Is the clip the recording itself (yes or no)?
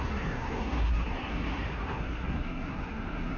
no